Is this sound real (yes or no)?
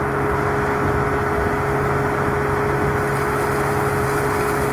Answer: yes